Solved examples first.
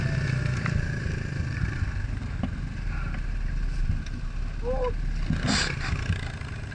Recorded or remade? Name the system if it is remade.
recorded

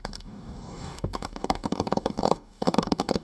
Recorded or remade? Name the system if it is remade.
remade, codec, DAC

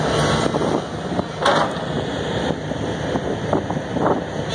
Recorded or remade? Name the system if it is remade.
recorded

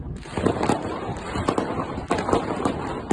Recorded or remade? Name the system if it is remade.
recorded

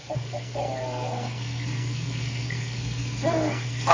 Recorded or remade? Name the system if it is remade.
remade, codec, SNAC